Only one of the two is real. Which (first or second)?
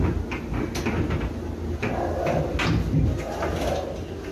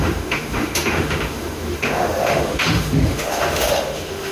first